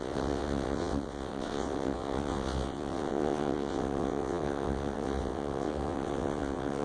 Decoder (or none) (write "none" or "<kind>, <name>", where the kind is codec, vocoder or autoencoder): vocoder, WaveNeXt